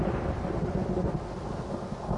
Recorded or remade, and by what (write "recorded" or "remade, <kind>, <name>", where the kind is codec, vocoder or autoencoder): recorded